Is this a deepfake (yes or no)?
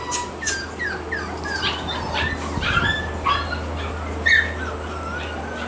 no